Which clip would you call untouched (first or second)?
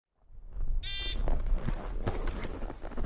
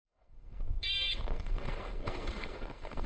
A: first